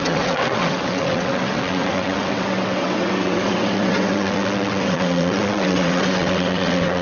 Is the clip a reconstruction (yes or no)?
yes